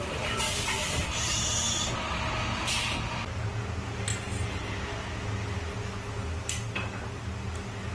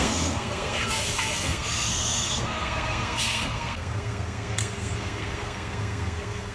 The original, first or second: first